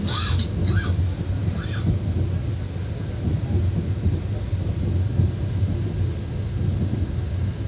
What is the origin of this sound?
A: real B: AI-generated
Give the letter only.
A